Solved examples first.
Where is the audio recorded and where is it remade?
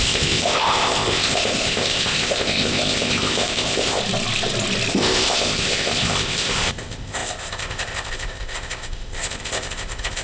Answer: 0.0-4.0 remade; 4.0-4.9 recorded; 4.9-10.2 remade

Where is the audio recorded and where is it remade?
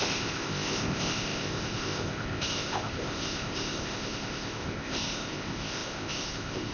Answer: 0.0-6.7 remade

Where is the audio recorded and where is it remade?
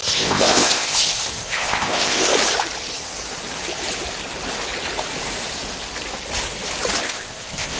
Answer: 0.0-2.3 remade; 2.3-7.0 recorded; 7.0-7.8 remade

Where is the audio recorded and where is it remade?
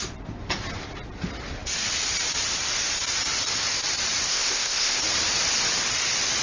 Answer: 0.0-4.3 recorded; 4.3-5.0 remade; 5.0-6.4 recorded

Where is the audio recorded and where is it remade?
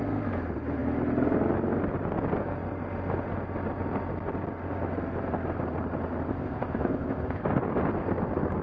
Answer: 0.0-6.3 recorded; 6.3-7.4 remade; 7.4-8.6 recorded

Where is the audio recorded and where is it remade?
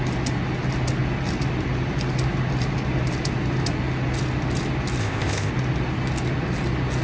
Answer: 0.0-5.0 recorded; 5.0-5.5 remade; 5.5-7.0 recorded